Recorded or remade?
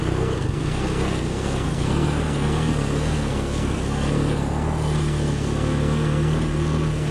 remade